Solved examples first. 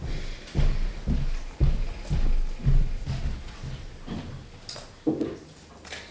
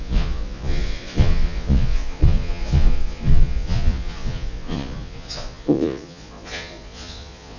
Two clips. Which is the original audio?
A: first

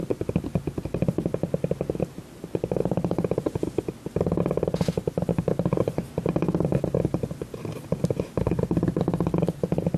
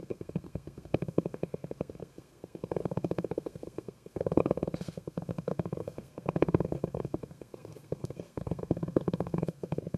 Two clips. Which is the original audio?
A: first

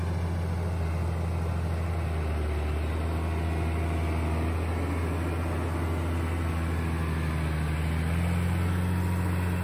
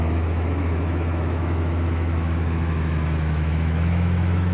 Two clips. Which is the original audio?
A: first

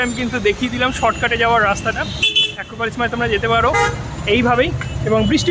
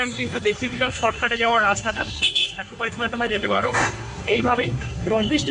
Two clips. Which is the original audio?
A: first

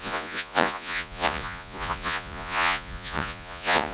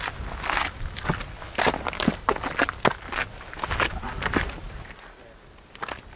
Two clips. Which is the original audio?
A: second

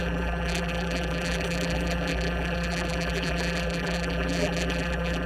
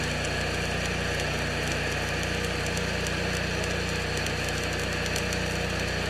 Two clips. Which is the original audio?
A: second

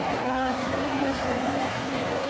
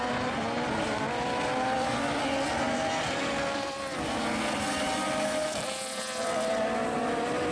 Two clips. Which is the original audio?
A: second